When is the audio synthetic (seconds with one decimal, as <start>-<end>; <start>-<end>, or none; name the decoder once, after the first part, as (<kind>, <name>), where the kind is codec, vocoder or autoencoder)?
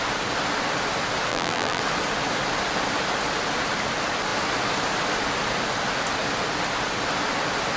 1.3-1.8 (vocoder, BigVGAN v2)